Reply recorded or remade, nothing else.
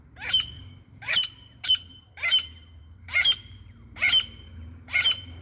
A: remade